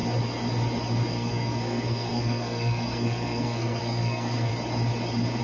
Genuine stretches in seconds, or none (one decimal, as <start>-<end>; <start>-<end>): 0.0-1.1; 4.5-5.4